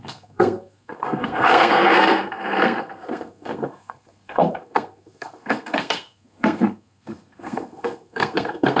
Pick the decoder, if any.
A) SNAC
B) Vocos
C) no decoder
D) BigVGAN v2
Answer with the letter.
A